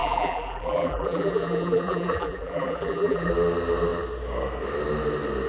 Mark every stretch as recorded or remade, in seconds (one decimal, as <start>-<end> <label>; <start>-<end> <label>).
0.0-3.3 remade; 3.3-5.5 recorded